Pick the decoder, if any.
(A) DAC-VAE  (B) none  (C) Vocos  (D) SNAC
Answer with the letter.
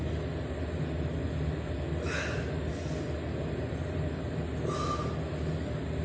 B